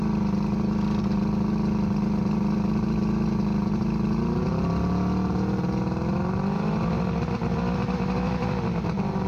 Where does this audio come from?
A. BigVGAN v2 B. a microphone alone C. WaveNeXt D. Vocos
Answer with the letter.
B